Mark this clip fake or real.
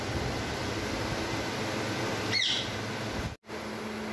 real